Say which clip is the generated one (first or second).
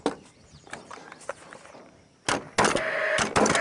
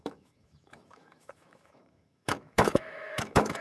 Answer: second